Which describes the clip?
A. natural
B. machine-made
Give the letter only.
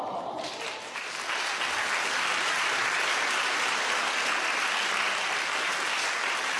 A